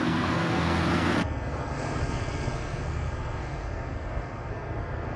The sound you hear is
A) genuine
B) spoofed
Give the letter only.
B